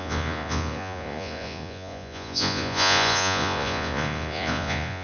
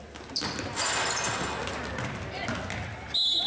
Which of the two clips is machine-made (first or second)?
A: first